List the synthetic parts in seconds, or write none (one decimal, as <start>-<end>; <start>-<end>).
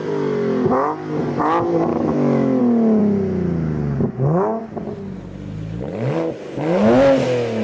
1.9-2.6